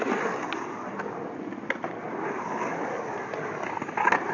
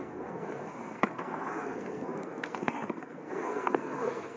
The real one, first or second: first